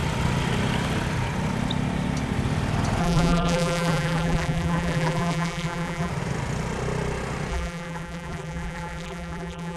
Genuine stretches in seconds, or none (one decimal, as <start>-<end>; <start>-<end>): 0.0-3.0; 6.1-7.5